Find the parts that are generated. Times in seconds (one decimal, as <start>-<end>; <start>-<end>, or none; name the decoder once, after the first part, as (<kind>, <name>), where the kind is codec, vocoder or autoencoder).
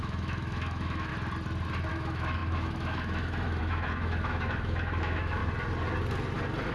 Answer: 0.0-1.1 (autoencoder, DAC-VAE); 1.9-5.4